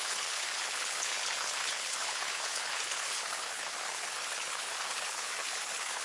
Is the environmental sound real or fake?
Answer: fake